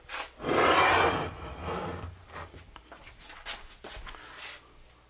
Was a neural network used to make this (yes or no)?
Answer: no